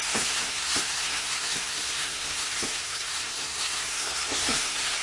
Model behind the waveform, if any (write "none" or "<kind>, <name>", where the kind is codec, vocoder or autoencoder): codec, SNAC